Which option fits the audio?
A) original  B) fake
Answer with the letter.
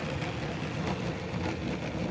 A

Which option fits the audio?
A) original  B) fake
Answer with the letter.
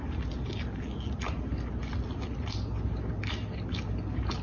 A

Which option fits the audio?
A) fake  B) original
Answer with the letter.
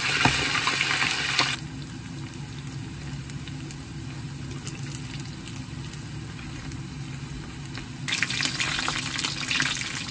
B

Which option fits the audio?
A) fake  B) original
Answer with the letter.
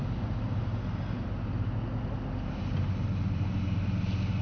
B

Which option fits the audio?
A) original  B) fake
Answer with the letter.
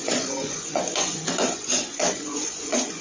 B